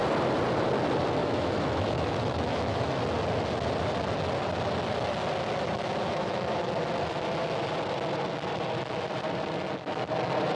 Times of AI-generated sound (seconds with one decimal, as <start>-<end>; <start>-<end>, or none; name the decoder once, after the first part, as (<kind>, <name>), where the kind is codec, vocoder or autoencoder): 1.2-3.0 (autoencoder, DAC-VAE); 6.0-6.7